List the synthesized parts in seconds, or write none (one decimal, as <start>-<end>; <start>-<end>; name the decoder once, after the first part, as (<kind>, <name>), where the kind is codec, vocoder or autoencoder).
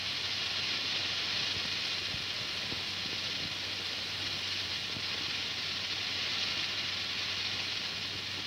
none